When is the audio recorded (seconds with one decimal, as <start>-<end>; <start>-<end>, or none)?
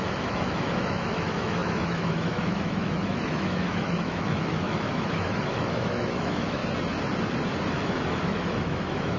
6.6-7.7